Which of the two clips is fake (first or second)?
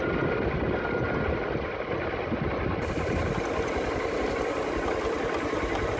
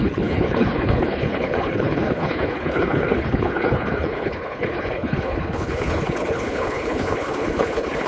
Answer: second